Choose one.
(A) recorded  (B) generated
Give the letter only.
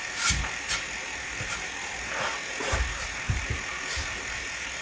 B